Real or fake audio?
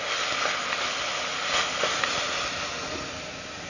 real